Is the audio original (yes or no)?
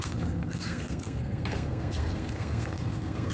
no